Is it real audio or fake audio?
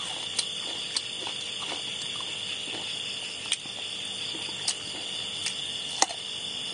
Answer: real